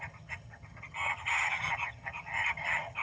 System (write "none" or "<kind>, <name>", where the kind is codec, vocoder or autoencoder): vocoder, HiFi-GAN